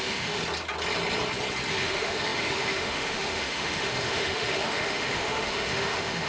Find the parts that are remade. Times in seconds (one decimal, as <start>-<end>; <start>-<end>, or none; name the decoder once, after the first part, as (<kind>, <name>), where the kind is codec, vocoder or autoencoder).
0.0-0.4 (autoencoder, DAC-VAE); 1.7-6.3